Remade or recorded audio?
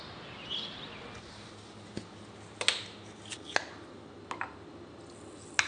recorded